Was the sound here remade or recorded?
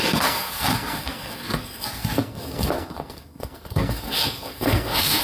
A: remade